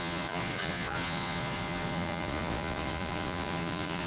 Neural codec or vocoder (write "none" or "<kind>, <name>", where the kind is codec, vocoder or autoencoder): vocoder, Vocos